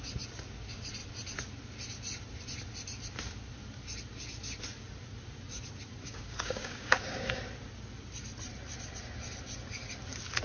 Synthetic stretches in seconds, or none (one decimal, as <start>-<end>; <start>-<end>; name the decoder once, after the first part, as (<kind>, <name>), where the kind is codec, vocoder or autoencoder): 6.0-7.4 (codec, DAC)